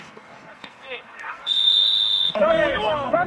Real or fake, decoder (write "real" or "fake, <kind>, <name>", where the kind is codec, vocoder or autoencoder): fake, codec, SNAC